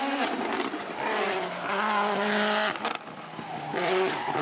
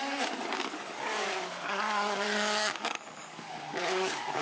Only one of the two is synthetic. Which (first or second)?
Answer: second